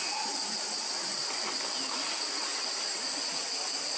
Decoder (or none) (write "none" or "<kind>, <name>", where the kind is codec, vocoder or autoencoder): none